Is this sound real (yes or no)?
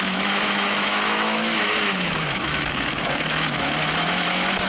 no